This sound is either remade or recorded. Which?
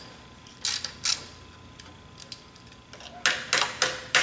recorded